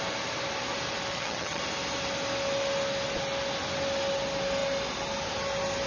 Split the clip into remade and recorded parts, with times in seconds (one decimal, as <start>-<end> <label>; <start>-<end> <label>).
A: 0.0-1.1 recorded; 1.1-1.6 remade; 1.6-5.9 recorded